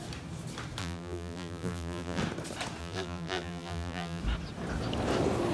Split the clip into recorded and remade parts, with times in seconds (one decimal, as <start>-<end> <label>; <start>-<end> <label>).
0.0-0.8 recorded; 0.8-2.2 remade; 2.2-2.8 recorded; 2.8-4.2 remade; 4.2-5.5 recorded